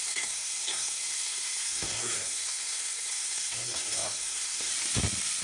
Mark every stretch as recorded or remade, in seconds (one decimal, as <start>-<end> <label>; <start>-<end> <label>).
0.0-4.7 remade; 4.7-5.4 recorded